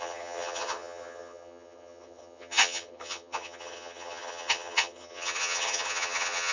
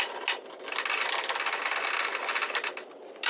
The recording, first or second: second